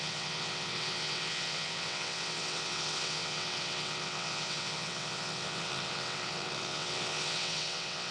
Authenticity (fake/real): fake